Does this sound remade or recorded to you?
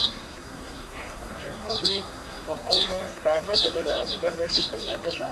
remade